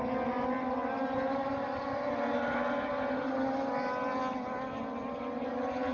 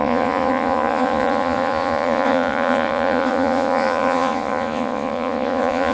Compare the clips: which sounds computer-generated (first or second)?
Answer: second